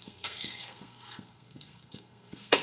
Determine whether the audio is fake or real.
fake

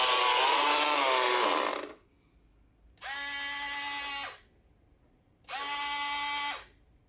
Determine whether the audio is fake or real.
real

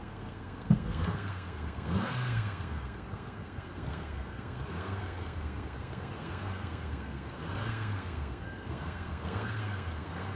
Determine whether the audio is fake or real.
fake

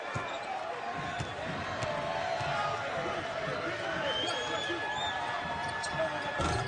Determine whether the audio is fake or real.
real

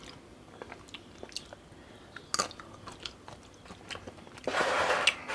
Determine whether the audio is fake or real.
real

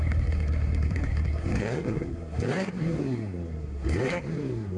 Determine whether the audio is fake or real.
fake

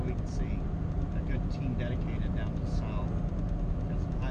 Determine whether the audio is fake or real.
real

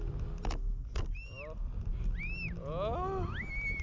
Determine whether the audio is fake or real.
real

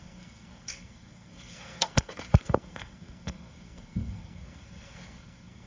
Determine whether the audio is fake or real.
fake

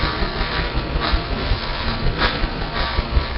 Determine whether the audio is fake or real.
fake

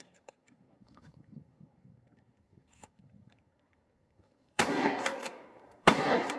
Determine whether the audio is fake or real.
fake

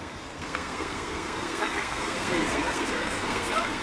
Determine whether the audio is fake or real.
fake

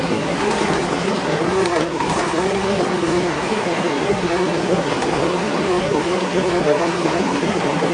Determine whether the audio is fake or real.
fake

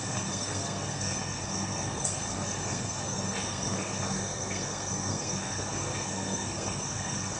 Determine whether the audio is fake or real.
fake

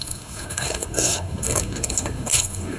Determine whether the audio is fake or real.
fake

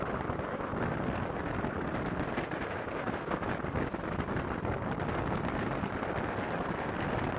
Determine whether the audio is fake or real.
real